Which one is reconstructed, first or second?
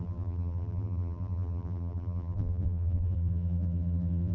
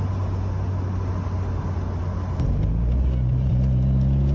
first